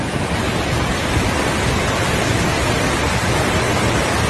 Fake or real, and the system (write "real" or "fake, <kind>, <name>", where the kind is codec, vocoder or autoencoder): real